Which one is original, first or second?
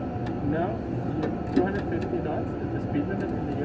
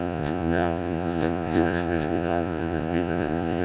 first